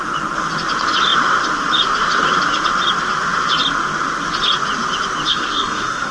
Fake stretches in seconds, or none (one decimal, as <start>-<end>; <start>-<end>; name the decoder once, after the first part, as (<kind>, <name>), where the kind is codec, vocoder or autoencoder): 5.3-6.1 (codec, SNAC)